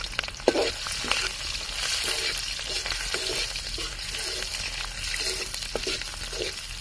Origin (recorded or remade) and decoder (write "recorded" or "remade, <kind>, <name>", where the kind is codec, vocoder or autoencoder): recorded